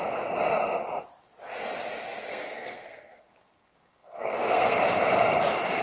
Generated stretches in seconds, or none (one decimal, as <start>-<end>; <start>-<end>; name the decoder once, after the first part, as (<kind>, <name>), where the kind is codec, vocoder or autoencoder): 2.3-4.8 (codec, SNAC)